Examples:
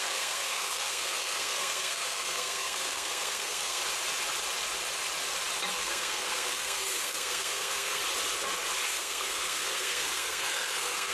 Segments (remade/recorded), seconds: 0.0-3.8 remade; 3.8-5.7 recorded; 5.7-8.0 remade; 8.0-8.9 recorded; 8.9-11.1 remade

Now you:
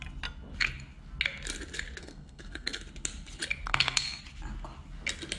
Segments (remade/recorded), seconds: 0.0-2.0 recorded; 2.0-2.8 remade; 2.8-3.7 recorded; 3.7-4.2 remade; 4.2-5.4 recorded

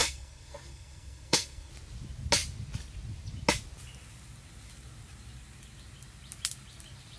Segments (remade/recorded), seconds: 0.0-1.7 remade; 1.7-7.2 recorded

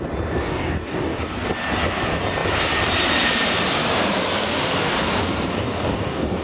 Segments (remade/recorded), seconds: 0.0-0.4 recorded; 0.4-1.2 remade; 1.2-5.5 recorded; 5.5-6.4 remade

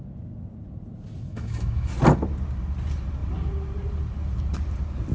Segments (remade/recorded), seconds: 0.0-1.3 recorded; 1.3-1.9 remade; 1.9-5.1 recorded

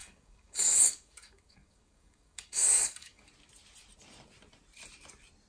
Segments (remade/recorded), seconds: 0.0-3.3 remade; 3.3-5.5 recorded